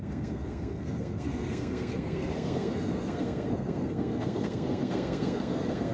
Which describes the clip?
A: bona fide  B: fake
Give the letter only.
B